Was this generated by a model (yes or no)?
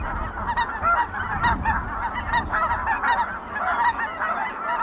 no